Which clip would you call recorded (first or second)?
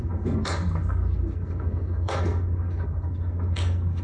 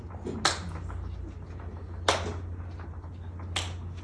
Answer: second